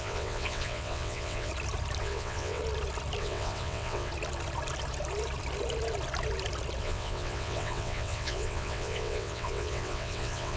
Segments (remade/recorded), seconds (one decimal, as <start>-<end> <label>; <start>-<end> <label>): 0.0-1.5 remade; 1.5-2.0 recorded; 2.0-2.6 remade; 2.6-3.2 recorded; 3.2-4.1 remade; 4.1-6.8 recorded; 6.8-10.6 remade